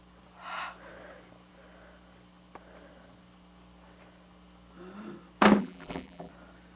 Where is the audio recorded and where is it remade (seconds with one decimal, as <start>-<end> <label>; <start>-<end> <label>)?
0.0-5.6 recorded; 5.6-6.3 remade; 6.3-6.8 recorded